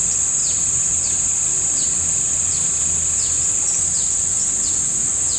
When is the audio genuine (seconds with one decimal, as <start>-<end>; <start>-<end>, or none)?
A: 0.0-0.4; 1.1-1.5; 4.7-5.4